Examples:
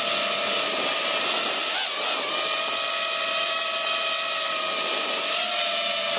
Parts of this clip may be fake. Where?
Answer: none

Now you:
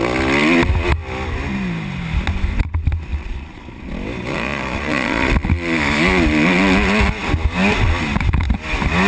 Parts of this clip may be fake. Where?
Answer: 3.1-3.6 (vocoder, Vocos); 4.3-5.3

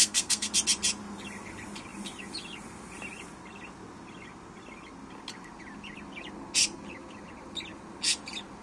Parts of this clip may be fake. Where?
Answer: 0.0-0.5 (codec, SNAC)

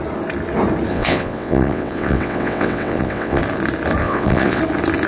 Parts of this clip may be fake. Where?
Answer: 0.9-3.4 (vocoder, WaveNeXt); 4.0-4.6

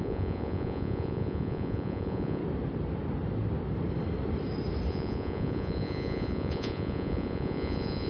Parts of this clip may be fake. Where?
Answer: 0.0-2.4 (vocoder, Vocos); 4.9-8.1

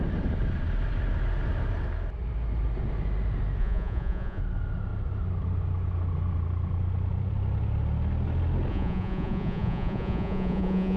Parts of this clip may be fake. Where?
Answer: 3.6-4.4 (vocoder, Vocos); 8.7-11.0

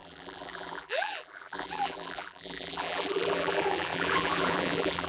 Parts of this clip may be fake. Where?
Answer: 0.0-5.1 (vocoder, BigVGAN v2)